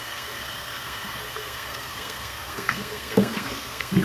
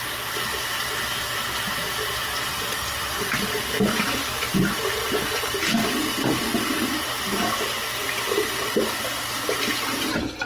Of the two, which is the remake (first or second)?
first